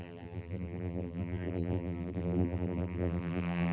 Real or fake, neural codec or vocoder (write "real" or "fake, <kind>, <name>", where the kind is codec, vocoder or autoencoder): fake, vocoder, BigVGAN v2